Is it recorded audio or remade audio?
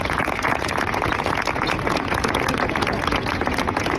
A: remade